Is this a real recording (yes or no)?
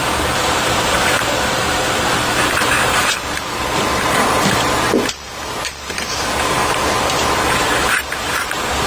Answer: no